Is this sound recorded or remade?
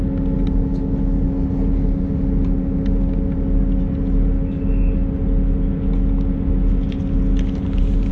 recorded